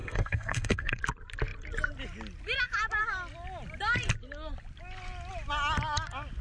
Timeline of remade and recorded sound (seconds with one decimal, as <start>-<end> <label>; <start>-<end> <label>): 0.0-1.0 remade; 1.0-6.4 recorded